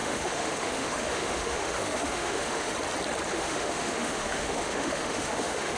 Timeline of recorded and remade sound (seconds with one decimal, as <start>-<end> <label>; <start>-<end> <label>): 0.0-2.7 remade; 2.7-3.3 recorded; 3.3-5.8 remade